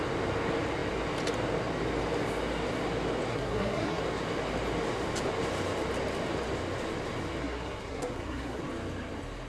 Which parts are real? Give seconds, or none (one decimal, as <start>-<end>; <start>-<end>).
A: 0.0-3.3; 4.0-7.4; 8.6-9.5